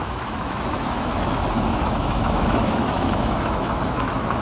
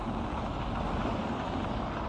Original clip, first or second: second